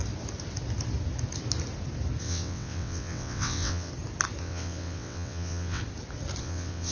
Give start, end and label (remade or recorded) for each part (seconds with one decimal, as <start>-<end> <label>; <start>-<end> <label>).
0.0-2.2 recorded; 2.2-3.9 remade; 3.9-4.4 recorded; 4.4-5.8 remade; 5.8-6.4 recorded; 6.4-6.9 remade